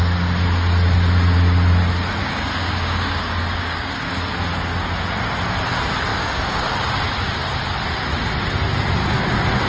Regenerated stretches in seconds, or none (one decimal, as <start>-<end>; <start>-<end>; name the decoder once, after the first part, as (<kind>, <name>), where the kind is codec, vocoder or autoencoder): 2.2-4.0 (codec, DAC); 6.1-6.6